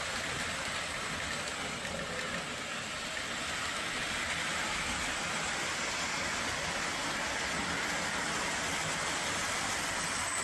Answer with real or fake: real